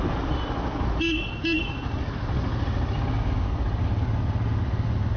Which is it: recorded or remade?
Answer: recorded